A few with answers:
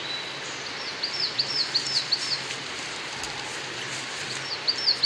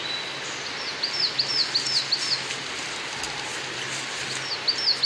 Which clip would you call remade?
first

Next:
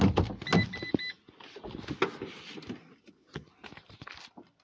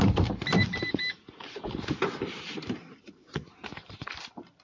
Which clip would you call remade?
second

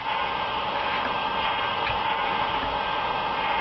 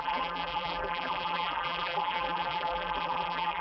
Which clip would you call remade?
second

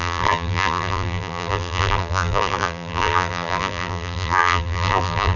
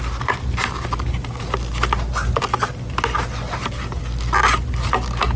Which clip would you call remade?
first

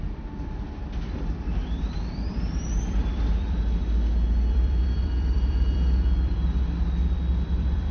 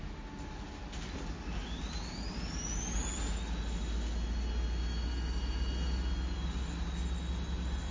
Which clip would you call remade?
first